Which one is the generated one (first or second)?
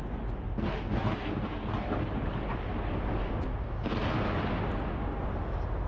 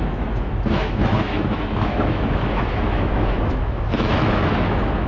second